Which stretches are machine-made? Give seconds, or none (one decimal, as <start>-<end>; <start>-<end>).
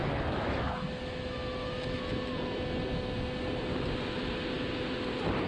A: 0.0-2.0